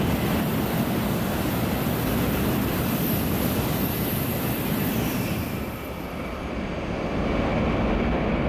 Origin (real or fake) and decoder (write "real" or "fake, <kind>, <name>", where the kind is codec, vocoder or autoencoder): real